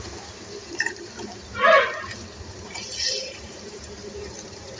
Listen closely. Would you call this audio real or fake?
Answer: fake